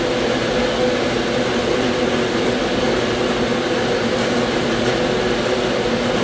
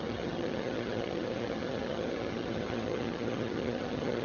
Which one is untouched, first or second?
first